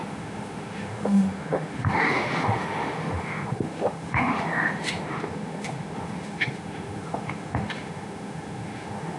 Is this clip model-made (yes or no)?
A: yes